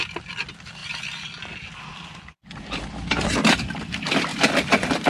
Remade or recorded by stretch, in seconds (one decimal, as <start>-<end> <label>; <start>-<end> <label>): 0.0-4.3 recorded; 4.3-5.1 remade